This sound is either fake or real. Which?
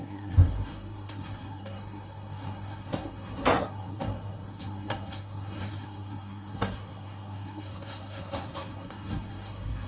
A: fake